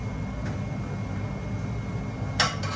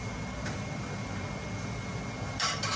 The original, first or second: first